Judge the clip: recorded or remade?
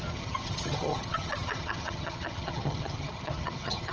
remade